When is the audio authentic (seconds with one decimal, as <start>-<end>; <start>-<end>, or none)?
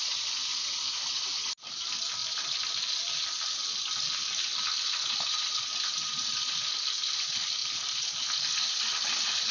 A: 0.0-9.5